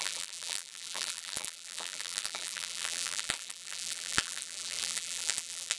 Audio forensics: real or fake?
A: fake